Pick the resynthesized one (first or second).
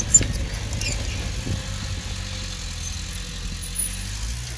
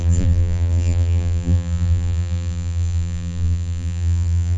second